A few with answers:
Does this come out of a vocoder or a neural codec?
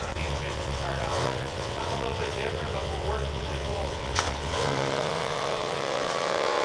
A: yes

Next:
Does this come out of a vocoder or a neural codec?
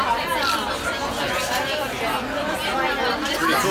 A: no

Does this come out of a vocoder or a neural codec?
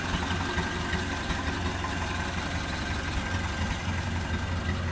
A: no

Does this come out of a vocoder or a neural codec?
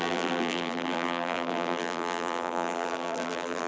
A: yes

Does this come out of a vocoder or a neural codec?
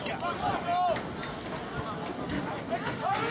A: no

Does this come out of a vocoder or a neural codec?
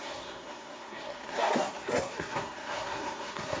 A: yes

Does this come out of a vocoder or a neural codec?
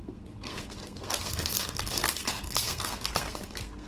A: yes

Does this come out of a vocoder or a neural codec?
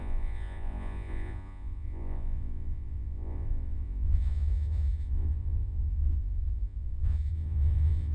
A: yes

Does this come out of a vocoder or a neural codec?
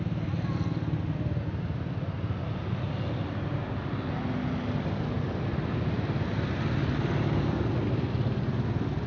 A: no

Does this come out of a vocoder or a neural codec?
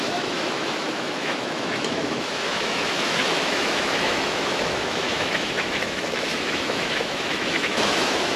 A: yes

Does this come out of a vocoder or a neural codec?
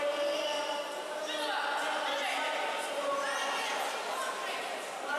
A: no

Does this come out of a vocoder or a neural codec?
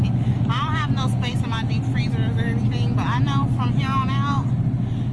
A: no